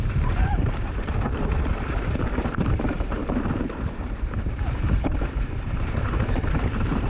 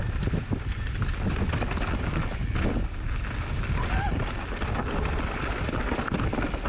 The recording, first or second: second